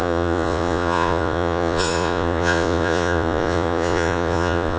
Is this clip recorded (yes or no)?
no